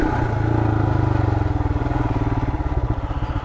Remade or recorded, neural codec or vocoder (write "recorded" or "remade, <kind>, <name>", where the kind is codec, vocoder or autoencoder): recorded